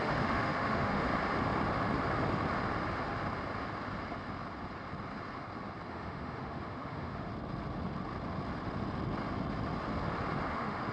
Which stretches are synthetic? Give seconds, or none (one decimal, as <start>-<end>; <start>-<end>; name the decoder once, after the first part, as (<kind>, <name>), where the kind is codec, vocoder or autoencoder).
0.0-1.1 (autoencoder, DAC-VAE); 5.9-7.3; 10.5-10.9